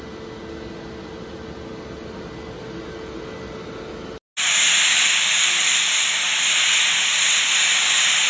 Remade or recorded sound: recorded